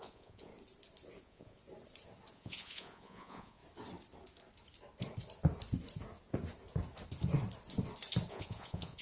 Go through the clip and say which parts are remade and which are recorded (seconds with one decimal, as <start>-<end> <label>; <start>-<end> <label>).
0.0-0.5 remade; 0.5-1.2 recorded; 1.2-1.6 remade; 1.6-2.3 recorded; 2.3-3.6 remade; 3.6-8.3 recorded; 8.3-9.0 remade